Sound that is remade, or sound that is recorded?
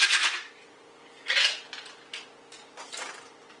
recorded